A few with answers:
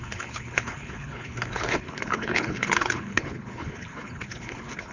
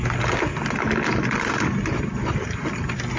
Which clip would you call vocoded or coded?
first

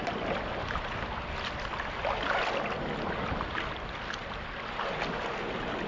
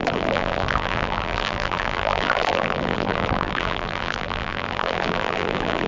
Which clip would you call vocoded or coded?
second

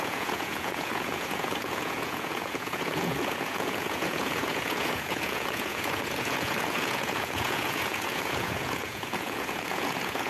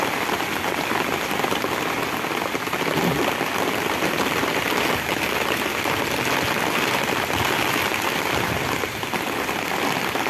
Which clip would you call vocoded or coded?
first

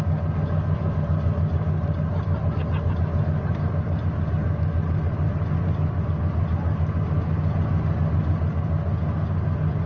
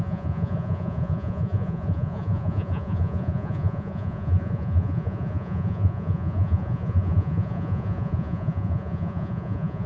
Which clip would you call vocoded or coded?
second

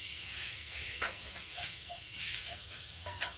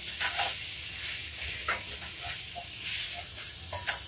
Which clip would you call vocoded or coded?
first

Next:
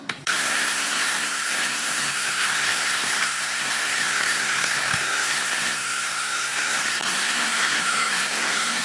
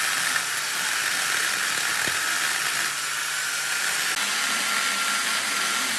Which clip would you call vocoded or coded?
first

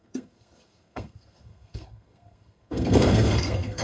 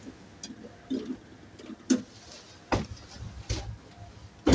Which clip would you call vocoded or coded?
first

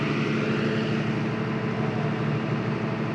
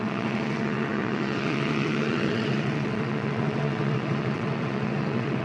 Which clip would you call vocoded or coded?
second